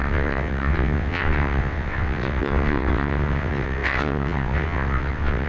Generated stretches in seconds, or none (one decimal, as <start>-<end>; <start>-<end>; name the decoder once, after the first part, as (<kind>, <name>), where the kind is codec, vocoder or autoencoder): 0.0-5.5 (vocoder, WaveNeXt)